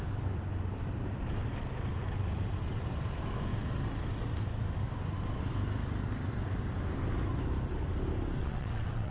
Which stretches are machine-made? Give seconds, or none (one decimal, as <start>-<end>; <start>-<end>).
8.4-9.1